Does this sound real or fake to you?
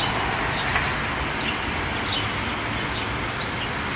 real